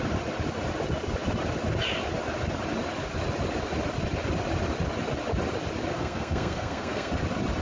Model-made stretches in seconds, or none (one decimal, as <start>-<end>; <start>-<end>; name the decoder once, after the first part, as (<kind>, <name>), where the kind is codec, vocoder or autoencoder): 5.9-7.1 (codec, SNAC)